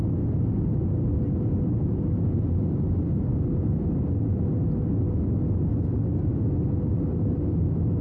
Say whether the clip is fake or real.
real